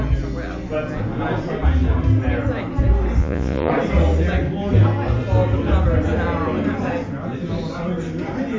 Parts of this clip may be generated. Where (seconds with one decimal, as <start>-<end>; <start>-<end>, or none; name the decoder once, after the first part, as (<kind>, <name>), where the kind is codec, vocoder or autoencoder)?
3.2-3.7 (vocoder, Vocos)